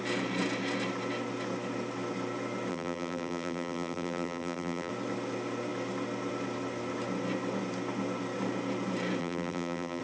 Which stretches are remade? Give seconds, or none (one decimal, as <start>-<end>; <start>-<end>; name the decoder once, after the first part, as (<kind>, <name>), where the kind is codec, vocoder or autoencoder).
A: 2.7-4.9 (vocoder, BigVGAN v2); 9.2-10.0